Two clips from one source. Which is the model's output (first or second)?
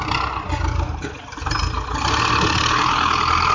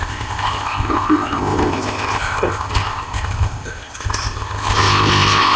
second